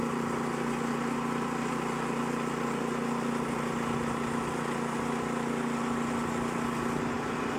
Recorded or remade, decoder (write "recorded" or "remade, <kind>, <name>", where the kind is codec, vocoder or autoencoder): recorded